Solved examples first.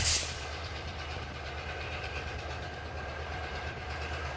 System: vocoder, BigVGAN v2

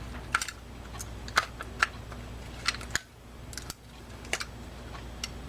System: none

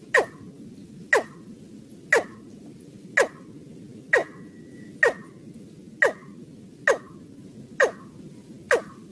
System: none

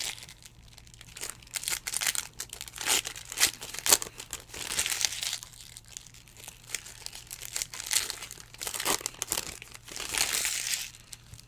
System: none